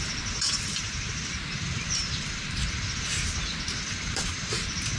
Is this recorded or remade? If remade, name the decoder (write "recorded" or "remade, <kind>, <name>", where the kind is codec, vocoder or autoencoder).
remade, vocoder, BigVGAN v2